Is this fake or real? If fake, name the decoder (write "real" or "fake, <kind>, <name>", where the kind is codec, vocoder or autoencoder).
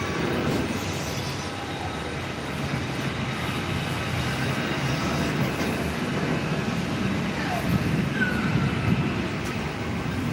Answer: real